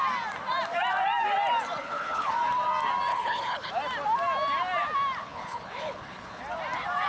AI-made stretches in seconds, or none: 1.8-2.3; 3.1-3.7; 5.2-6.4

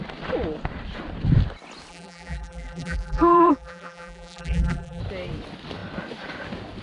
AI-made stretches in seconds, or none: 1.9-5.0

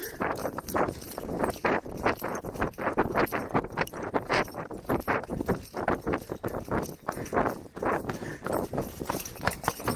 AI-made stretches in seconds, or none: 0.0-5.3; 8.0-10.0

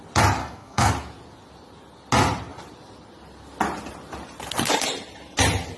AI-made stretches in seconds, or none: 0.4-0.9

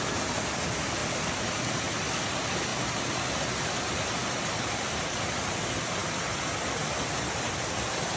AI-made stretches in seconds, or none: none